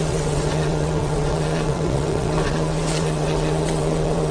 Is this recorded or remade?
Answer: remade